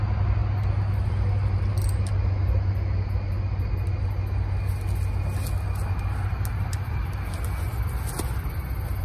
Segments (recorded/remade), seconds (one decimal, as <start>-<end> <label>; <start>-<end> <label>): 0.0-9.0 recorded